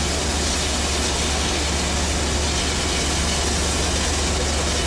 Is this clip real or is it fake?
real